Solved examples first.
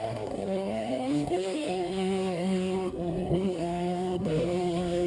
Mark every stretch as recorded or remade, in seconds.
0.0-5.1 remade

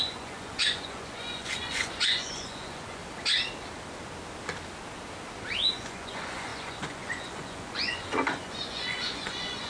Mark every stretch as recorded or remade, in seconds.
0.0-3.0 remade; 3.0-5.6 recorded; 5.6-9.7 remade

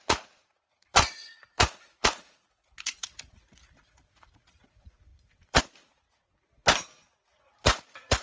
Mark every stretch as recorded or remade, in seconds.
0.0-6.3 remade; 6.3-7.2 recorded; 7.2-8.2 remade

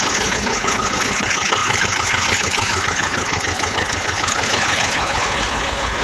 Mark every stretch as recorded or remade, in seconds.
0.0-6.0 remade

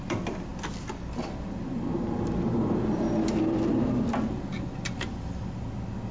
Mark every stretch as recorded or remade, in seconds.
0.0-6.1 recorded